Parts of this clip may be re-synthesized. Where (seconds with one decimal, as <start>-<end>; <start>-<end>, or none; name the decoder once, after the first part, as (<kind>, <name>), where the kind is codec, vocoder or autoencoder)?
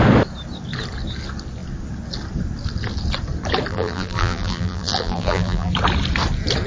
3.7-5.7 (vocoder, BigVGAN v2)